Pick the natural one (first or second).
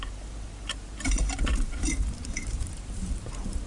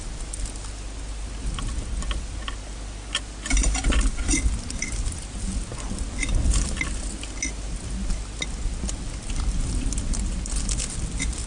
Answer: second